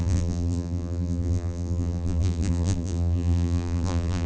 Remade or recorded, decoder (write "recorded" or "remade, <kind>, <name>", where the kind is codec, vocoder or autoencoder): remade, vocoder, BigVGAN v2